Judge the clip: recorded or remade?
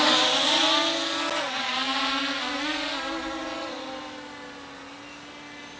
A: recorded